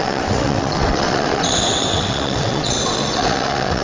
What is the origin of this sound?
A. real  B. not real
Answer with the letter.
B